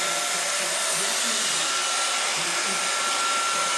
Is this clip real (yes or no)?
yes